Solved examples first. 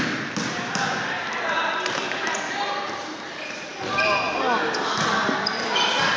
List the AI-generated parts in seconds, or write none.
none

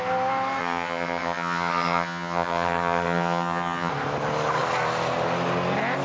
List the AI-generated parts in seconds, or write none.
0.6-3.9 (vocoder, HiFi-GAN)

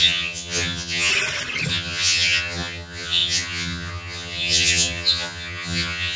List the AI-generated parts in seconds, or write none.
0.0-1.1 (vocoder, HiFi-GAN); 1.7-6.2

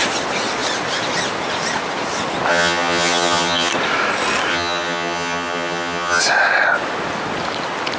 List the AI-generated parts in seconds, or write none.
2.5-3.7 (vocoder, HiFi-GAN); 4.5-6.2

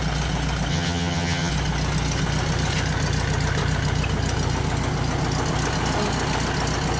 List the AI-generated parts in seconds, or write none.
0.7-1.5 (vocoder, HiFi-GAN)

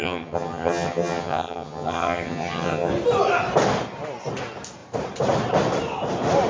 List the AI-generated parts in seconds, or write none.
0.0-2.9 (vocoder, HiFi-GAN)

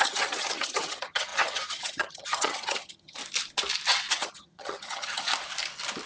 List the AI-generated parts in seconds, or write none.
0.0-3.2 (vocoder, HiFi-GAN); 4.1-5.3

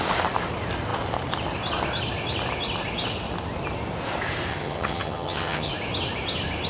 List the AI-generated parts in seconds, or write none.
4.5-5.7 (vocoder, HiFi-GAN)